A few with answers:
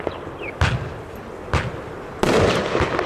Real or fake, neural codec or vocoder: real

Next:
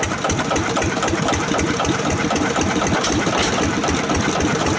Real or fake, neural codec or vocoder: fake, vocoder, BigVGAN v2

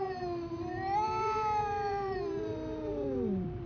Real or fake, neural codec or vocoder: fake, vocoder, BigVGAN v2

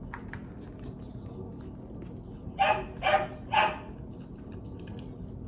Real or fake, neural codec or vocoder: real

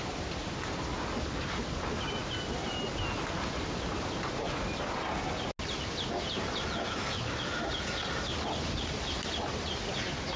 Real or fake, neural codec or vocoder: real